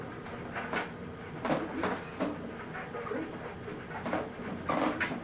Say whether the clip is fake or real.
real